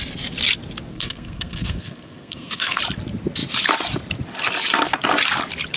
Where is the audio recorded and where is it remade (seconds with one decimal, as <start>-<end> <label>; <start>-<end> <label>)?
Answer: 0.0-0.9 recorded; 0.9-2.8 remade; 2.8-5.8 recorded

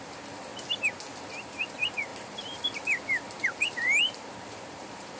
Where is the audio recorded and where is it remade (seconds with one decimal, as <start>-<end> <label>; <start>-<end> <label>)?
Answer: 0.0-0.5 remade; 0.5-1.2 recorded; 1.2-5.2 remade

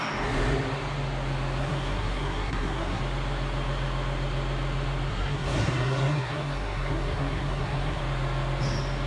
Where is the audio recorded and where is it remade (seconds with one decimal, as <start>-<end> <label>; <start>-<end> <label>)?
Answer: 0.0-1.6 recorded; 1.6-3.0 remade; 3.0-5.1 recorded; 5.1-8.0 remade; 8.0-9.1 recorded

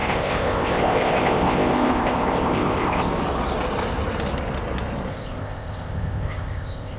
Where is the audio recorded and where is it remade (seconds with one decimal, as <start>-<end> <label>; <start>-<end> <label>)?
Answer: 0.0-3.1 remade; 3.1-5.1 recorded; 5.1-7.0 remade